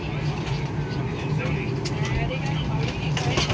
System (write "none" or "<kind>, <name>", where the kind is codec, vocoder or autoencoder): none